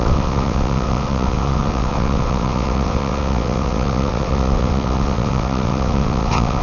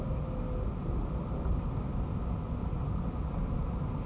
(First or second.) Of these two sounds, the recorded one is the second